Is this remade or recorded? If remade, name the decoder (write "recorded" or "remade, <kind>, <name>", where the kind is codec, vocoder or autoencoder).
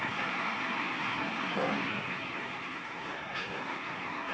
remade, codec, SNAC